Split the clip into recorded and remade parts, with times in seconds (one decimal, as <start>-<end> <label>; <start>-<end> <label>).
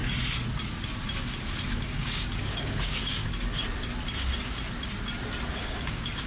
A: 0.0-1.7 recorded; 1.7-3.2 remade; 3.2-5.5 recorded; 5.5-6.3 remade